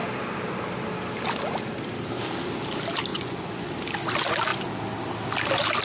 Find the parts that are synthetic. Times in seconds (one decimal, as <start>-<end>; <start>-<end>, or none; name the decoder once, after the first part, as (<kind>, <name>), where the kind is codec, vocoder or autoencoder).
3.1-3.7 (vocoder, Vocos)